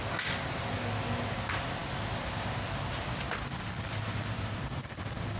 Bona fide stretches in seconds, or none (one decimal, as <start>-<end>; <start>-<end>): 0.0-5.4